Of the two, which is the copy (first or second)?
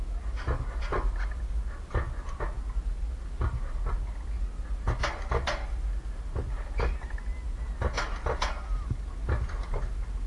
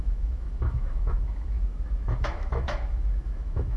second